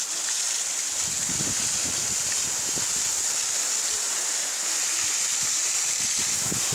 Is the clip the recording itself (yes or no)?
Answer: yes